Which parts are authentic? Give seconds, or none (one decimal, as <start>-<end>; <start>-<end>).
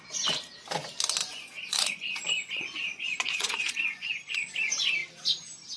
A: 0.0-1.2; 4.5-5.8